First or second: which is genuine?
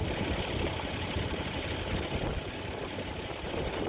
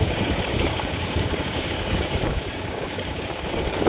first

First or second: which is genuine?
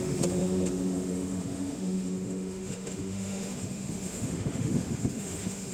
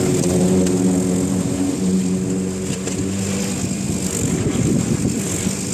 second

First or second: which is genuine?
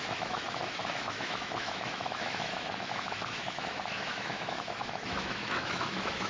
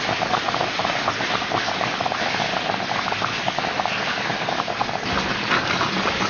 second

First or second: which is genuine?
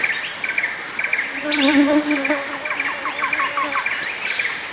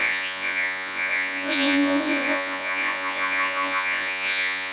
first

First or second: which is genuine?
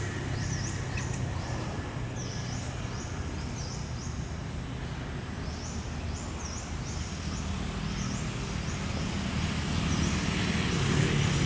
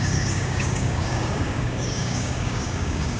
first